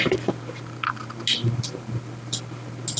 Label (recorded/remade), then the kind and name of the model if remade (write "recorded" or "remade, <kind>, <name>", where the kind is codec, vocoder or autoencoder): recorded